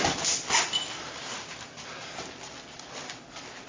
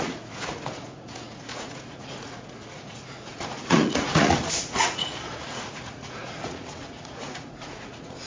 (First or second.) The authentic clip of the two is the first